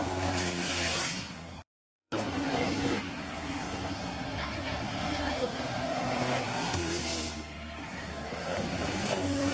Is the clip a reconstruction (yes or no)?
yes